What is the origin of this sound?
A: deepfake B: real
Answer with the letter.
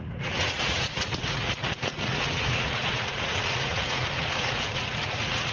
A